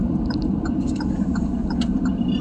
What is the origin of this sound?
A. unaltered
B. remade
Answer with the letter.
A